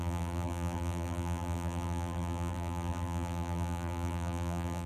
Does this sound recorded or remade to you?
remade